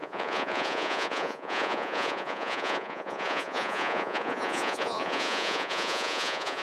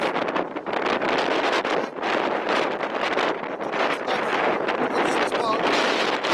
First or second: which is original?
second